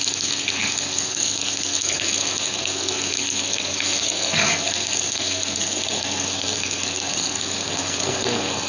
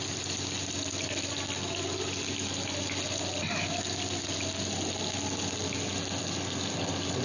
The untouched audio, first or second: second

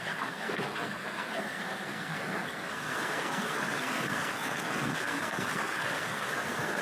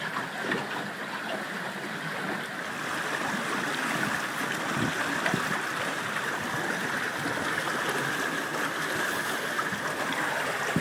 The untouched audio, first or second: second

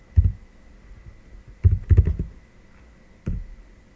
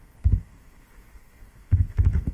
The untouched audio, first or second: first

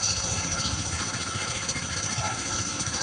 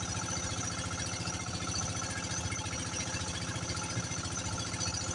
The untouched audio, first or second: second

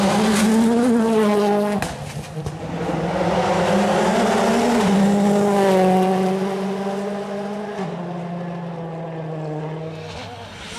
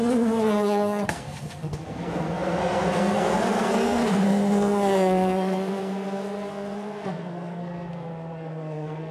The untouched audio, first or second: first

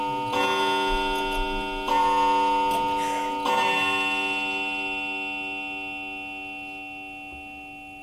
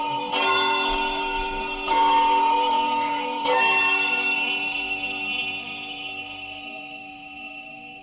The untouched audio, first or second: first